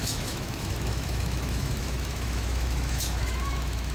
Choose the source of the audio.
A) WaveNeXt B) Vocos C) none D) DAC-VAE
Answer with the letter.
D